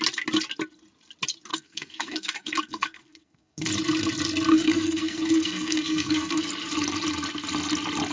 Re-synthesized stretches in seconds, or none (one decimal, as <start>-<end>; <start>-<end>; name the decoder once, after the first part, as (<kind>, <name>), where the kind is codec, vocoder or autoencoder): 1.5-3.7 (codec, SNAC); 4.5-6.5